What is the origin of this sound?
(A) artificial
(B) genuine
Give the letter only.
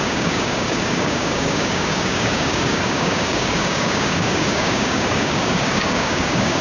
A